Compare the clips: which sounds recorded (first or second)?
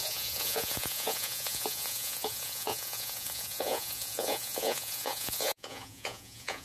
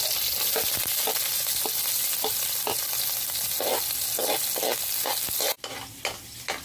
second